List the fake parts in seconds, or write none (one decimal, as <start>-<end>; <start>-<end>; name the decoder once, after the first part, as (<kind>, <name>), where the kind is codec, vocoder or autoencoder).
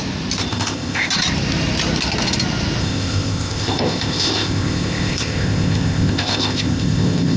0.5-1.1 (codec, ZipCodec); 2.8-7.4